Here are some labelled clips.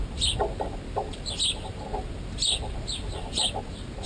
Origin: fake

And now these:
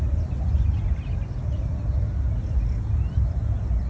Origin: real